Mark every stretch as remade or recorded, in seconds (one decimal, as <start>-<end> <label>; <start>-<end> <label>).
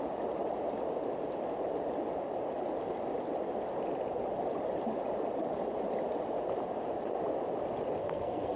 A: 0.0-8.0 recorded; 8.0-8.6 remade